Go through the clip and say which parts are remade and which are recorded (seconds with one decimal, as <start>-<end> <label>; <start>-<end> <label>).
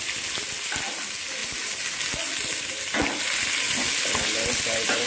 0.0-5.1 recorded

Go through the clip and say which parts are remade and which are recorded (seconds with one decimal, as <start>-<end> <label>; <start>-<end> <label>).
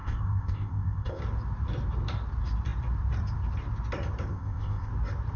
0.0-1.2 remade; 1.2-4.3 recorded; 4.3-4.9 remade; 4.9-5.4 recorded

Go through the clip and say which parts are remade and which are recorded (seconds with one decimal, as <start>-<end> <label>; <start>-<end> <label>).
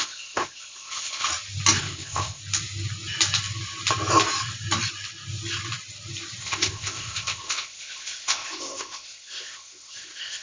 0.0-1.3 remade; 1.3-1.8 recorded; 1.8-2.4 remade; 2.4-6.4 recorded; 6.4-10.4 remade